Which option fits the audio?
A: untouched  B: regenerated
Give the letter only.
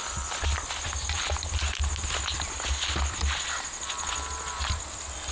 A